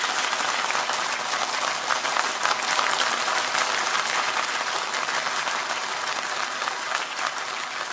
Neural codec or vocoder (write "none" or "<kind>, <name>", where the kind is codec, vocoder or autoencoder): none